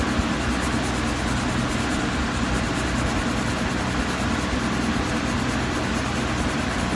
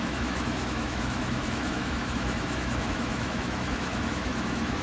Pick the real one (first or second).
first